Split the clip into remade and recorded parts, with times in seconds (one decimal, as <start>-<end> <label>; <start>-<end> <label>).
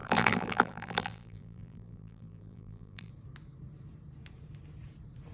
0.0-3.1 remade; 3.1-5.3 recorded